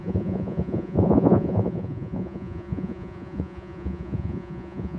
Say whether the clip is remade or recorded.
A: remade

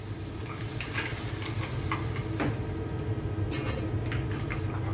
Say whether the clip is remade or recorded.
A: recorded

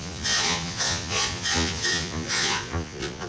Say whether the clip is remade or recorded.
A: remade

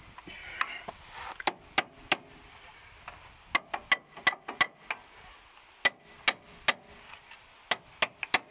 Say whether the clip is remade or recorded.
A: recorded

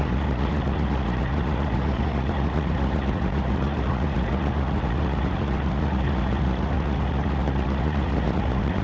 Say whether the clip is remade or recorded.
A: remade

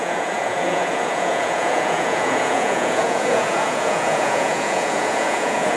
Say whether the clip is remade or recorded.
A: remade